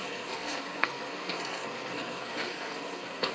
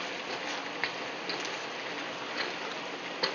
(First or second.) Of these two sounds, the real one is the second